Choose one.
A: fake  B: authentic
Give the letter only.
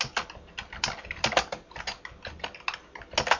B